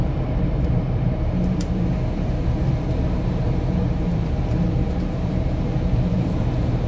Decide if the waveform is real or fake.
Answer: fake